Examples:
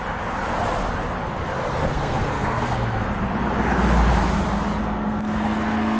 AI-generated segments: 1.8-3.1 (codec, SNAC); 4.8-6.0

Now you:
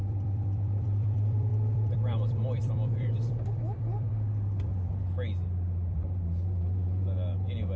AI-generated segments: 0.0-4.7 (vocoder, BigVGAN v2)

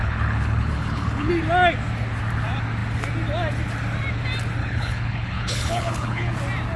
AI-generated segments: 0.0-1.3 (codec, HILCodec); 4.6-6.3

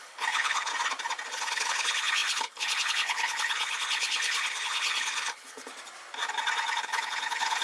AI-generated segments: 0.0-0.7 (codec, HILCodec); 1.3-5.7; 6.8-7.6